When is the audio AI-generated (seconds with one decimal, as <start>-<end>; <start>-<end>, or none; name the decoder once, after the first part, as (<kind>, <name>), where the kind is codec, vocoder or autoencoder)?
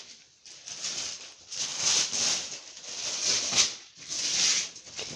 none